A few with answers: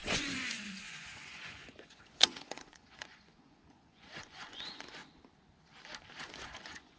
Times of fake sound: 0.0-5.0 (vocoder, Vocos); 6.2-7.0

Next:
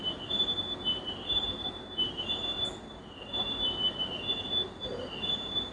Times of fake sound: none

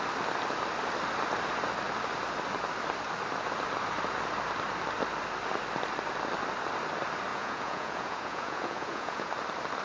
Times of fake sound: 7.3-9.3 (vocoder, Vocos)

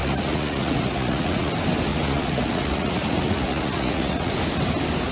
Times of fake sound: 0.0-1.5 (vocoder, Vocos); 1.9-4.3

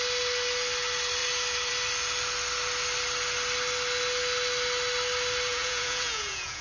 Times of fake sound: 5.5-6.6 (vocoder, Vocos)

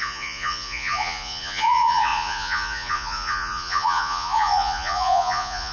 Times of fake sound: 0.0-5.7 (vocoder, Vocos)

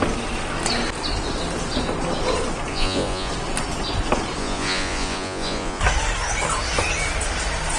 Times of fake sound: 2.7-3.3 (vocoder, Vocos); 4.4-5.8